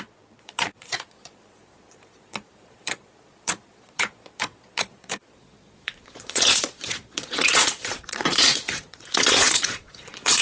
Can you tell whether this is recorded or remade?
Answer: remade